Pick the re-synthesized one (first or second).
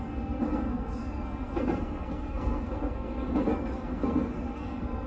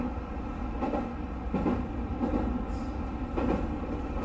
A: first